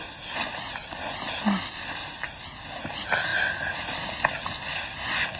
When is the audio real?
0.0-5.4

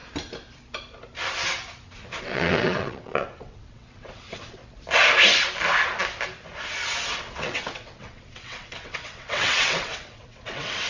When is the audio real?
0.0-2.2; 4.6-7.2

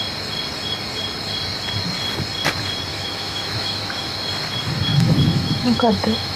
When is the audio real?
0.0-2.9; 4.2-4.9